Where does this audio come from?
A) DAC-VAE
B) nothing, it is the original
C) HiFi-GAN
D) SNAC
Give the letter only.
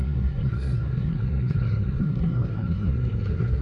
D